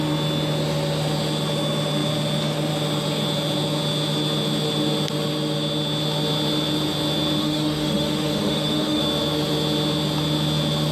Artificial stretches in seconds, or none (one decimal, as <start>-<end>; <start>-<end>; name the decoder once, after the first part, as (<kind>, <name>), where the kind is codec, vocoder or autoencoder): 7.4-9.0 (autoencoder, DAC-VAE)